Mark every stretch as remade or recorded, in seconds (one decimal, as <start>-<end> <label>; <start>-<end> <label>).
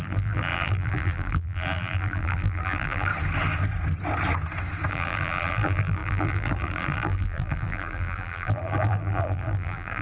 0.0-3.1 remade; 3.1-4.9 recorded; 4.9-10.0 remade